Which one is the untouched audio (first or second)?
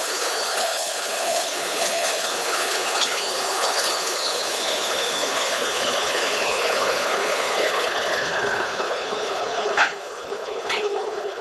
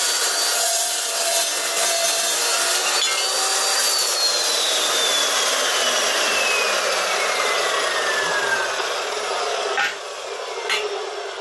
second